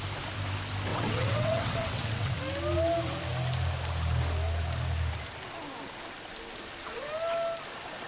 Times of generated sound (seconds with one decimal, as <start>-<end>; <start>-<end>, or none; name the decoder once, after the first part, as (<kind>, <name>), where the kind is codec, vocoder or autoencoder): 0.9-2.4 (vocoder, WaveNeXt)